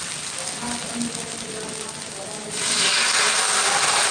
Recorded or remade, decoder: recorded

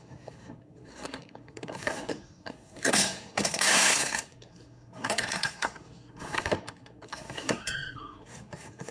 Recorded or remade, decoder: remade, codec, SNAC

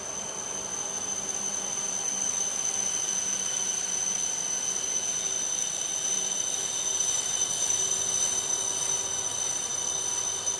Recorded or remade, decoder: recorded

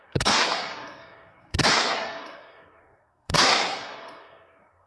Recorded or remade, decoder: remade, codec, SNAC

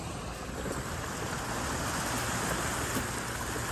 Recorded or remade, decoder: recorded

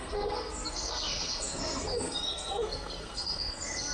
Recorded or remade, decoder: remade, codec, SNAC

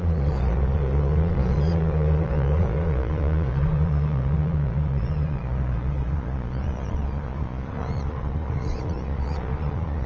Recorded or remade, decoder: remade, vocoder, Vocos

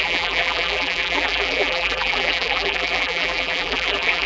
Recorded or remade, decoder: remade, vocoder, BigVGAN v2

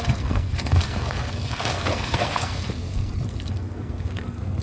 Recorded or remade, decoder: remade, codec, SNAC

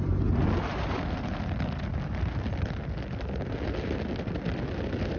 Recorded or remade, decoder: recorded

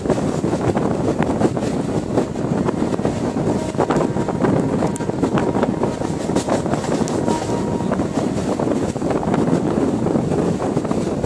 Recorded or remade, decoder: recorded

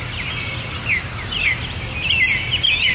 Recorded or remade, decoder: recorded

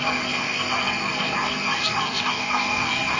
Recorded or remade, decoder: remade, codec, SNAC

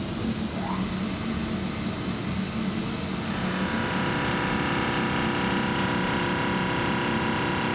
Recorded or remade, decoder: recorded